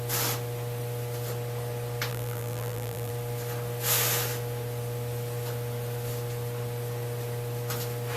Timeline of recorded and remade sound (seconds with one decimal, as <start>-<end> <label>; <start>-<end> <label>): 0.0-2.1 recorded; 2.1-3.1 remade; 3.1-8.2 recorded